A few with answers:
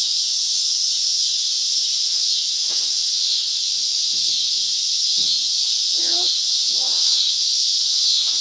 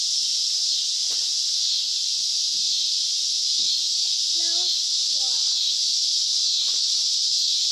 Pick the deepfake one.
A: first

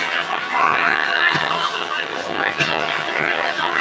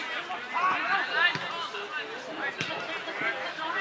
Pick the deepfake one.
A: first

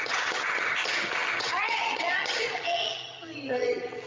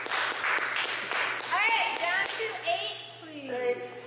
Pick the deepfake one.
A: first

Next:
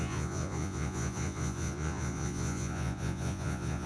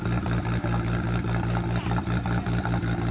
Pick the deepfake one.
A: first